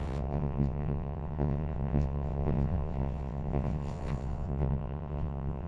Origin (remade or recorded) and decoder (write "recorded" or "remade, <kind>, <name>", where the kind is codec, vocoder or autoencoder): remade, vocoder, WaveNeXt